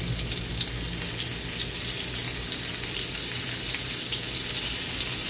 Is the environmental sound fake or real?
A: real